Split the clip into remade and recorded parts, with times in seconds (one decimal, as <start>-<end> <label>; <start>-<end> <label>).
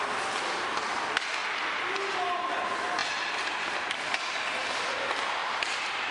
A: 0.0-6.1 recorded